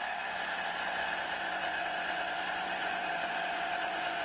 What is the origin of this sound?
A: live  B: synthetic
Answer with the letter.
B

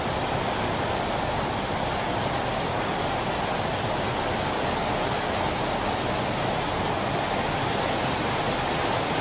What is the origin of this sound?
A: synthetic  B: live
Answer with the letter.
B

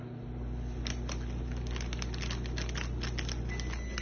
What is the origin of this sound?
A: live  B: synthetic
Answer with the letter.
A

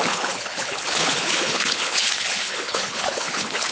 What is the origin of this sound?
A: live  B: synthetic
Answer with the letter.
B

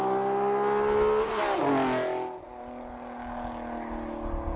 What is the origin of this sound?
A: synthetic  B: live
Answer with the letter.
B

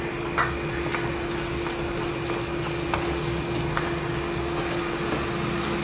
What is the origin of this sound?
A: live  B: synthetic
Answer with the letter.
A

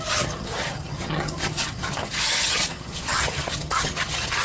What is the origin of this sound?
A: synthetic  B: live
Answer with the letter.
A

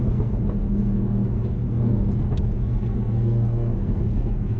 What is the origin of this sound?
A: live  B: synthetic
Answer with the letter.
B